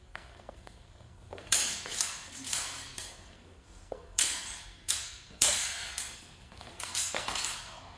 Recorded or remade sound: remade